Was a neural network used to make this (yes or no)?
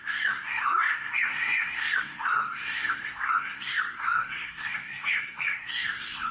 yes